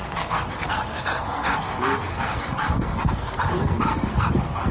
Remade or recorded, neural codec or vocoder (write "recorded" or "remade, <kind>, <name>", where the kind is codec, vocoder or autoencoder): remade, codec, SNAC